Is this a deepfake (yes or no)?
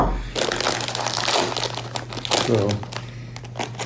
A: no